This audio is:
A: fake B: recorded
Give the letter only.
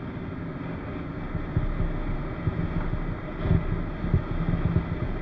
B